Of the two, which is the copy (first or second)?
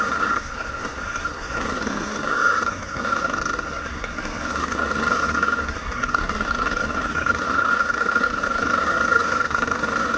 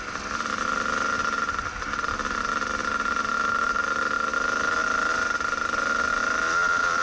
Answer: first